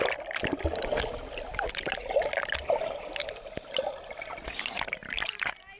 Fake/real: real